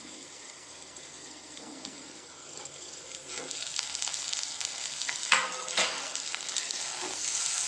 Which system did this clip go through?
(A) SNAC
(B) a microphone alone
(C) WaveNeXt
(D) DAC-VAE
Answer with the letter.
A